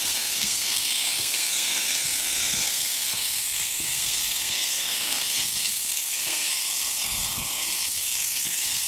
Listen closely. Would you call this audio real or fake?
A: fake